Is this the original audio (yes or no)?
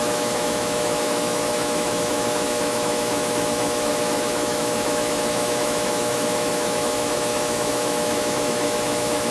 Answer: no